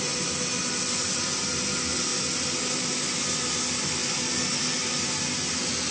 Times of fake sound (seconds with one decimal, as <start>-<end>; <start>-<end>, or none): none